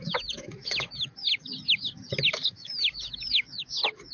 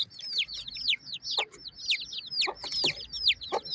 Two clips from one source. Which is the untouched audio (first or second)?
second